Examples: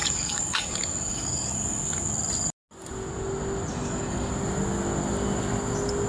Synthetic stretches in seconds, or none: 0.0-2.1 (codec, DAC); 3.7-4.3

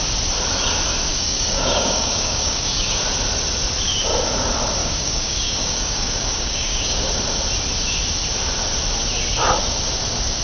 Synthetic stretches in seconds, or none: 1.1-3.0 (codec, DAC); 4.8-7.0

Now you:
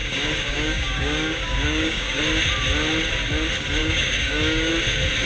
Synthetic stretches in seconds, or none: 0.0-2.2 (codec, DAC); 3.8-4.7

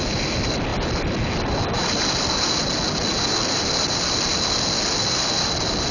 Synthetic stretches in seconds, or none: none